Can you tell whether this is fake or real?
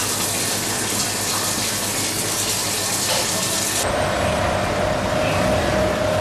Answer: real